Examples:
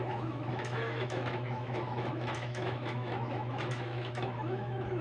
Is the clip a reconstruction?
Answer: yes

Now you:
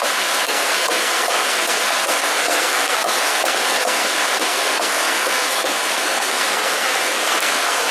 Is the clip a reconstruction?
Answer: yes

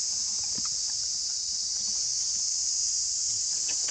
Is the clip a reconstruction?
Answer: no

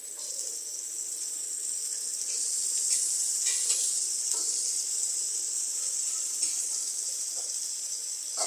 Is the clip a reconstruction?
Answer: no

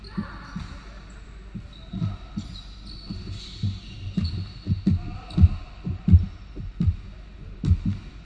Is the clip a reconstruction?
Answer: no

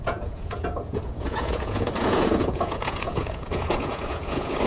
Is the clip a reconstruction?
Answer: yes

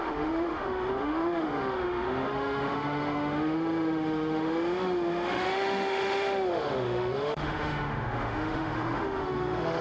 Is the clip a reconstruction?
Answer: yes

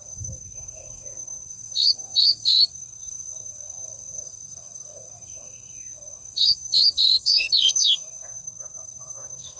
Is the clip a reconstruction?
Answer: yes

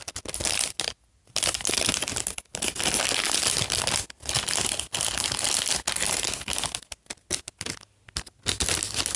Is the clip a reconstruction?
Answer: no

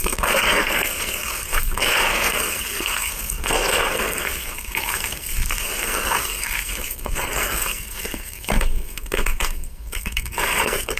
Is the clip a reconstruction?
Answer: yes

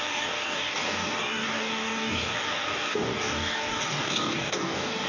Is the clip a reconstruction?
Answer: yes